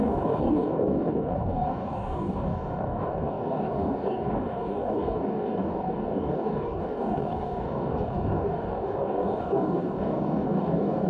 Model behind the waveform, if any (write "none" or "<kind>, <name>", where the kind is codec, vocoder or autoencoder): codec, DAC